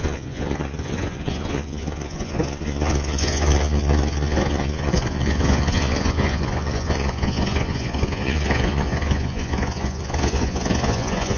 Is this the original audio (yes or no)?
no